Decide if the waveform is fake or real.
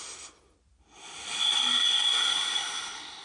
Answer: real